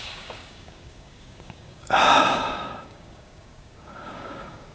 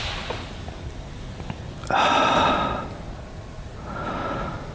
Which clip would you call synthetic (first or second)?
first